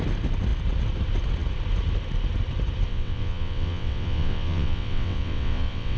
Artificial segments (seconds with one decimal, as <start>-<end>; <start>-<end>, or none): 2.9-6.0